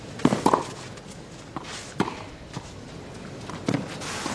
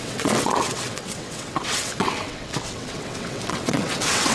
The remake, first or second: second